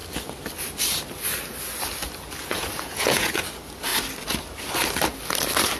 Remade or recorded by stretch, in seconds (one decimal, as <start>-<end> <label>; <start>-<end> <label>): 0.0-2.4 recorded; 2.4-3.4 remade; 3.4-5.8 recorded